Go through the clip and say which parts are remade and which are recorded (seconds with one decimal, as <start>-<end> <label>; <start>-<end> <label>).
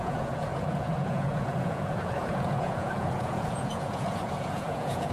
0.0-5.1 remade